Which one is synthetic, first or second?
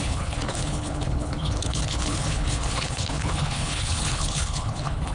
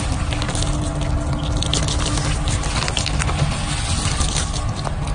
first